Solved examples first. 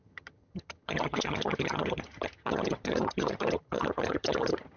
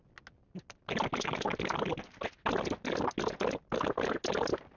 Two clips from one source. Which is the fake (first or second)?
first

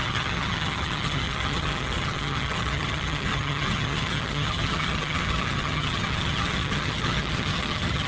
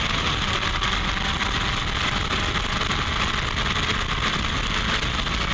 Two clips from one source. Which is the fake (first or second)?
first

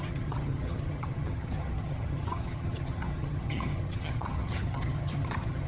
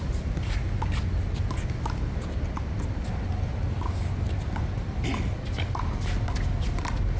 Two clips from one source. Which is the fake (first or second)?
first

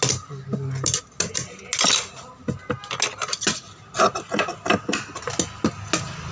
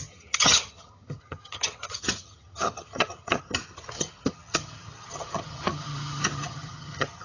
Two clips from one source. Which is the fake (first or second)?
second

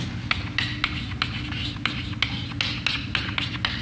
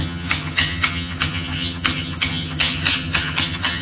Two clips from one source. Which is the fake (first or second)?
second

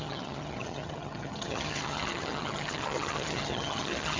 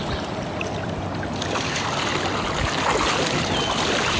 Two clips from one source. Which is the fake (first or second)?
first